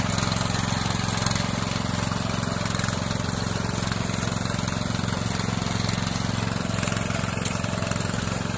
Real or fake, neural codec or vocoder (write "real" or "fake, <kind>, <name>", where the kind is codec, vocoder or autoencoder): real